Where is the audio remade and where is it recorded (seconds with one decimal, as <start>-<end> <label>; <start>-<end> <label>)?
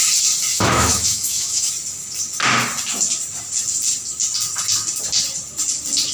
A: 0.0-0.5 recorded; 0.5-1.7 remade; 1.7-6.1 recorded